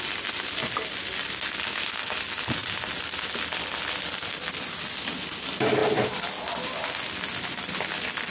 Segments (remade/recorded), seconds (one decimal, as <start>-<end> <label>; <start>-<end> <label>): 0.0-8.3 recorded

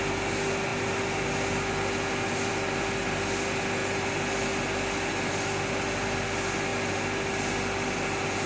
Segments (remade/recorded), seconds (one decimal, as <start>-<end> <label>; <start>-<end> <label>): 0.0-8.5 recorded

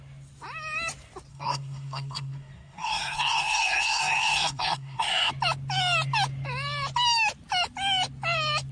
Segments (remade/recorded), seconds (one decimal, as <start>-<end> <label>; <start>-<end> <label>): 0.0-1.3 recorded; 1.3-5.3 remade; 5.3-8.7 recorded